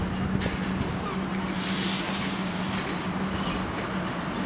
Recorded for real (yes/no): yes